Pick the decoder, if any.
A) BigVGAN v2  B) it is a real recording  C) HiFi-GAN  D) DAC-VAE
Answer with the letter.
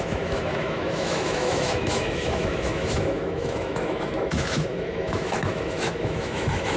D